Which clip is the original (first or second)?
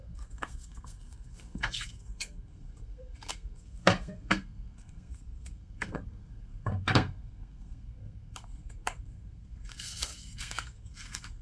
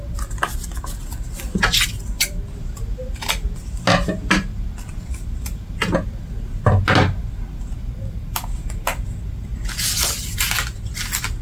second